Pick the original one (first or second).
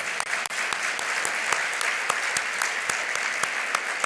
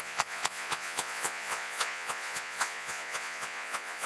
first